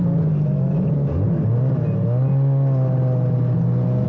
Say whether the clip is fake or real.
real